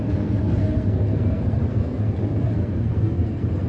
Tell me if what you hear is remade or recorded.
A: remade